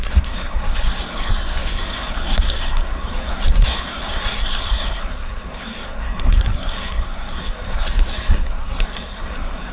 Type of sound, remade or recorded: remade